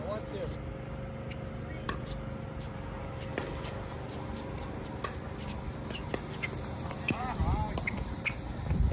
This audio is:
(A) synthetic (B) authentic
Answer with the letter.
B